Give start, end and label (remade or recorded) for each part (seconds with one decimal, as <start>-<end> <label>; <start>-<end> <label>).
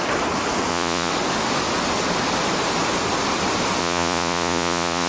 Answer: 0.0-0.7 recorded; 0.7-1.1 remade; 1.1-3.8 recorded; 3.8-5.1 remade